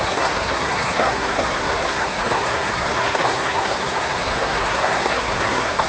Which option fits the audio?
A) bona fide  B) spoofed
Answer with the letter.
B